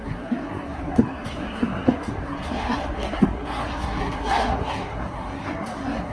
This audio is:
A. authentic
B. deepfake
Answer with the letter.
B